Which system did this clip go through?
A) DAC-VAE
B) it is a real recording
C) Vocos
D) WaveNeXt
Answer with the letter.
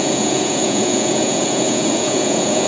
C